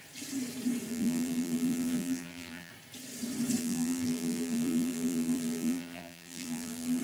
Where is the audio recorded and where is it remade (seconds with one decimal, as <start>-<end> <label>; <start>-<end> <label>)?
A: 0.0-0.9 recorded; 0.9-2.7 remade; 2.7-3.6 recorded; 3.6-7.0 remade